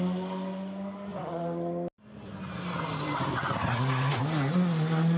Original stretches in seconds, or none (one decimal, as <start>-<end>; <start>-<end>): 0.0-5.2